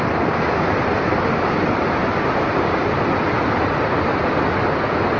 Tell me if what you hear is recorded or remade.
recorded